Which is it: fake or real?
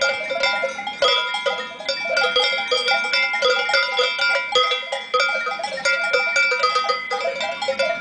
real